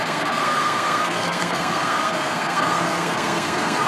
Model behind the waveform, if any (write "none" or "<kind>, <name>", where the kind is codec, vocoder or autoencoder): codec, SNAC